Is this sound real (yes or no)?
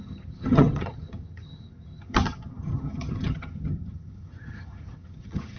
no